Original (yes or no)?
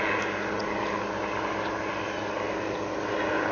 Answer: yes